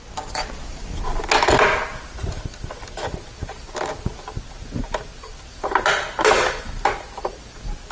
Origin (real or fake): real